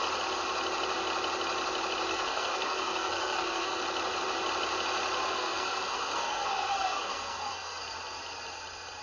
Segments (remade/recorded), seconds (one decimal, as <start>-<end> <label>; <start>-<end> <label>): 0.0-2.1 recorded; 2.1-3.8 remade; 3.8-5.3 recorded; 5.3-7.8 remade; 7.8-9.0 recorded